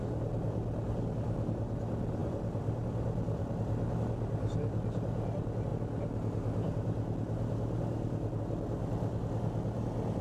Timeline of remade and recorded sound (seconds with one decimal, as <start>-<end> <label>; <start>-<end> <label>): 0.0-2.2 recorded; 2.2-3.5 remade; 3.5-10.2 recorded